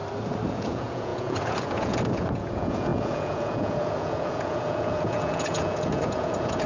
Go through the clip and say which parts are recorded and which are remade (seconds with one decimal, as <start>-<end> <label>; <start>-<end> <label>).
0.0-0.5 recorded; 0.5-6.7 remade

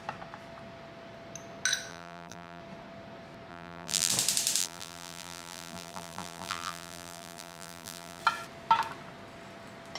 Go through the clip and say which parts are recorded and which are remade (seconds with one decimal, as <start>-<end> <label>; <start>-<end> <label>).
0.0-1.9 recorded; 1.9-2.6 remade; 2.6-3.5 recorded; 3.5-4.1 remade; 4.1-4.6 recorded; 4.6-8.2 remade; 8.2-10.0 recorded

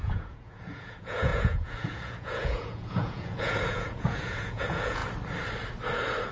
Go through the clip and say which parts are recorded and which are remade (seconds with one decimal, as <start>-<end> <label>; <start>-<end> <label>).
0.0-5.0 remade; 5.0-6.3 recorded

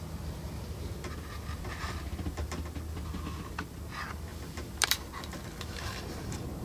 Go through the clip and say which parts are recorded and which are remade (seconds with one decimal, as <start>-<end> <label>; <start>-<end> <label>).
0.0-4.3 recorded; 4.3-6.0 remade; 6.0-6.6 recorded

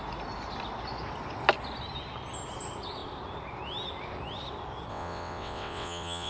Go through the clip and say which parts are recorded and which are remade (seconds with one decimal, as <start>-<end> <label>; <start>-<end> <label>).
0.0-4.9 recorded; 4.9-6.3 remade